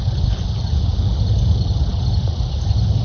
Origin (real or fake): real